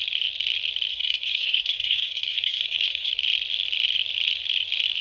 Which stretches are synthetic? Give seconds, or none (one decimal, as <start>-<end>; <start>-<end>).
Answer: 0.9-3.1

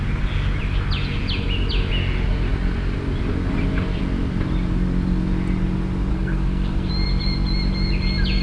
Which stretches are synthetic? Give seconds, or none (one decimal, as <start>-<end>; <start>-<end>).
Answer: 6.1-6.9

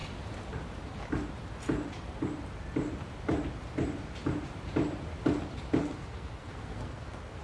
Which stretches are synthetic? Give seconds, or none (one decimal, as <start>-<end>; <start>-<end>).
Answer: 5.8-7.4

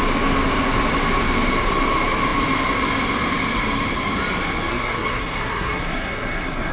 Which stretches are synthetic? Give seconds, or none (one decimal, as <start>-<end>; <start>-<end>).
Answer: 4.7-6.7

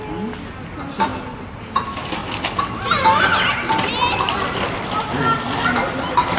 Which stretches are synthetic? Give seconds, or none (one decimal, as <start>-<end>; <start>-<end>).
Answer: none